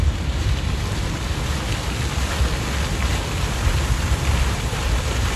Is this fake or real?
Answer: real